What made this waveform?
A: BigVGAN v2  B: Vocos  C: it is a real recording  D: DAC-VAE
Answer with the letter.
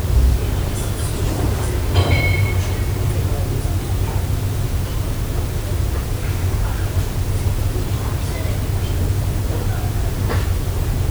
C